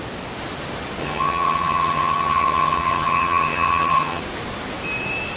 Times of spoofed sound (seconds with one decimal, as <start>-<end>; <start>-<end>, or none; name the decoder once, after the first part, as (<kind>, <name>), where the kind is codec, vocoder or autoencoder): 1.0-4.2 (vocoder, HiFi-GAN)